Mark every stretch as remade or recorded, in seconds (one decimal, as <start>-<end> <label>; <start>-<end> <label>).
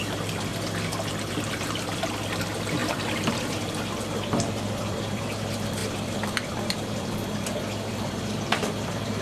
0.0-0.5 remade; 0.5-1.5 recorded; 1.5-9.2 remade